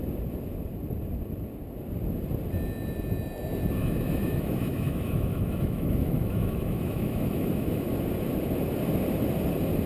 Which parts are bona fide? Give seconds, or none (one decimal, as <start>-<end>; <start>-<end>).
0.0-3.8; 7.9-9.9